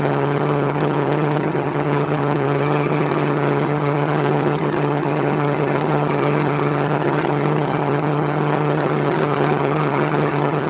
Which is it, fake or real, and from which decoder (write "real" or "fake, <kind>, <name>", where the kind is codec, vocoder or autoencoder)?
fake, vocoder, HiFi-GAN